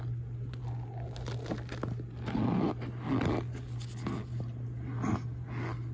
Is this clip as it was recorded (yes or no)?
yes